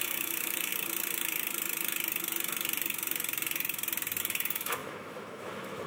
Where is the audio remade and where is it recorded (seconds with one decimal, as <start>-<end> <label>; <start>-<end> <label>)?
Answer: 0.0-0.7 remade; 0.7-4.2 recorded; 4.2-5.9 remade